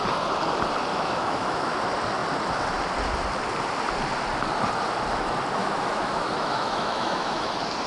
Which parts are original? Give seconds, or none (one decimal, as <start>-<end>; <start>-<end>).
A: 0.0-0.9; 1.7-5.6; 7.5-7.9